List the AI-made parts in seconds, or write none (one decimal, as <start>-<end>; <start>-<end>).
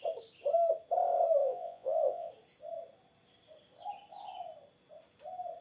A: 1.4-2.3